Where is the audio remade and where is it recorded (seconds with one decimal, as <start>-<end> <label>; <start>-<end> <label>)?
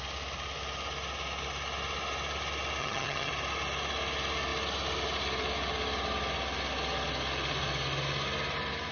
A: 0.0-2.8 recorded; 2.8-3.3 remade; 3.3-8.9 recorded